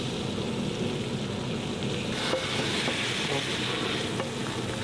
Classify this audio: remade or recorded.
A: recorded